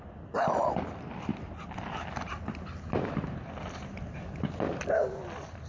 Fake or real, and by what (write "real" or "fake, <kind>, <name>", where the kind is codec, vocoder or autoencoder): real